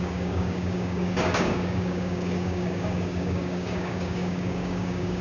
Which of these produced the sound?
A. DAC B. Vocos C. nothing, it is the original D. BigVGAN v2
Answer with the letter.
A